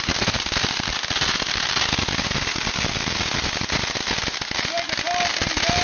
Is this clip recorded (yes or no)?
yes